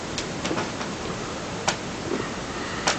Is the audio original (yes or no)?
yes